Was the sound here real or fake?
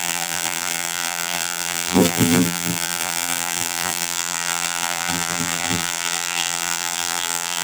fake